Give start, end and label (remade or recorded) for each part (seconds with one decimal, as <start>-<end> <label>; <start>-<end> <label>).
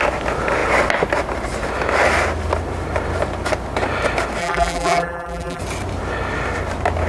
0.0-4.4 recorded; 4.4-5.6 remade; 5.6-7.1 recorded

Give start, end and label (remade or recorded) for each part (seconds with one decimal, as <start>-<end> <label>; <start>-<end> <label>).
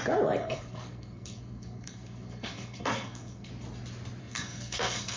0.0-0.4 recorded; 0.4-3.5 remade; 3.5-4.2 recorded; 4.2-5.2 remade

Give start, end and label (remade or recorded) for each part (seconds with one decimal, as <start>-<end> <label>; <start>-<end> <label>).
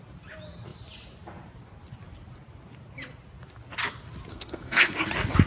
0.0-4.3 recorded; 4.3-4.9 remade; 4.9-5.5 recorded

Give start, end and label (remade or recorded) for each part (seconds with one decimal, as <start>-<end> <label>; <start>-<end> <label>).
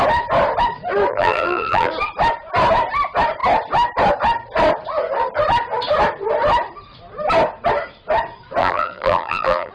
0.0-1.1 recorded; 1.1-1.9 remade; 1.9-8.6 recorded; 8.6-9.7 remade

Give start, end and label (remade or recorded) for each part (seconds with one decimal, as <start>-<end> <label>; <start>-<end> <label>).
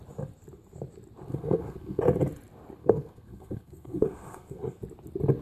0.0-1.3 recorded; 1.3-2.0 remade; 2.0-2.8 recorded; 2.8-4.8 remade; 4.8-5.4 recorded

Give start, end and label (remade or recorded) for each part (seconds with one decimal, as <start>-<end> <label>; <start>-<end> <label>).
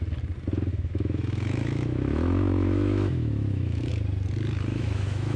0.0-0.7 recorded; 0.7-3.9 remade; 3.9-4.7 recorded; 4.7-5.4 remade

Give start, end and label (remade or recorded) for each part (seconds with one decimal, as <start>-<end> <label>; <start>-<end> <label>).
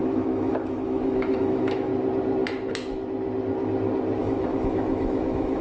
0.0-1.9 remade; 1.9-4.2 recorded; 4.2-5.6 remade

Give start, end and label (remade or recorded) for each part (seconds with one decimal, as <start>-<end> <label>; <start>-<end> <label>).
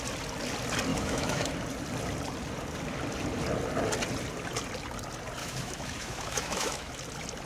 0.0-0.9 recorded; 0.9-1.5 remade; 1.5-5.4 recorded; 5.4-6.9 remade; 6.9-7.5 recorded